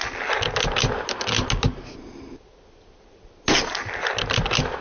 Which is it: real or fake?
real